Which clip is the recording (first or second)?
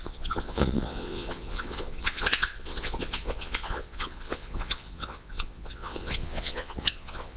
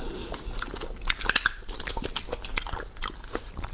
second